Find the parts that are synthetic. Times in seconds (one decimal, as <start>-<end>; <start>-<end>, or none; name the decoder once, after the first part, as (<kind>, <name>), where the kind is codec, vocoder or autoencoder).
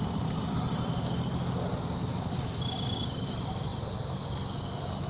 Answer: none